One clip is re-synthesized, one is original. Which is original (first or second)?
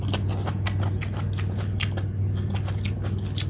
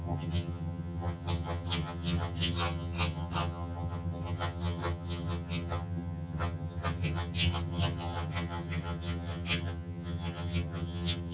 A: first